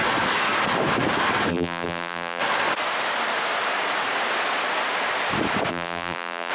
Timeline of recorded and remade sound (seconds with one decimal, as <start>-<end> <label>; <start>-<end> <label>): 0.0-1.5 recorded; 1.5-2.4 remade; 2.4-5.7 recorded; 5.7-6.5 remade

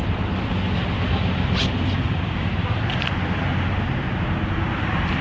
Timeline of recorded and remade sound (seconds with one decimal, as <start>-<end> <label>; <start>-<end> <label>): 0.0-5.2 recorded

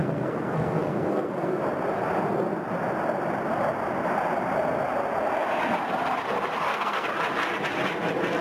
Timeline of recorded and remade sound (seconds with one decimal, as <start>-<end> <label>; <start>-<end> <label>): 0.0-1.6 remade; 1.6-6.6 recorded; 6.6-7.1 remade; 7.1-8.4 recorded

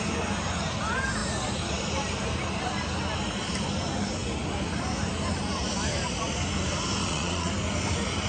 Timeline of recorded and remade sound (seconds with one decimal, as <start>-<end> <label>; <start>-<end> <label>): 0.0-7.0 recorded; 7.0-7.5 remade; 7.5-8.3 recorded